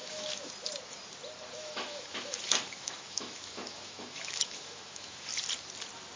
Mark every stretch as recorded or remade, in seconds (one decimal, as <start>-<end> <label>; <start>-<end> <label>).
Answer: 0.0-0.5 remade; 0.5-1.6 recorded; 1.6-5.3 remade; 5.3-6.2 recorded